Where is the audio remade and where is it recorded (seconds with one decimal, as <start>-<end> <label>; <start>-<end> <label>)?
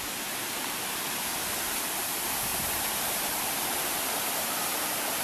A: 0.0-2.5 recorded; 2.5-4.3 remade; 4.3-5.2 recorded